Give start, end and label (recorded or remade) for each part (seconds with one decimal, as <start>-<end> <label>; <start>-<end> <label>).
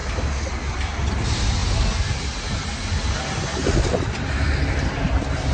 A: 0.0-5.5 recorded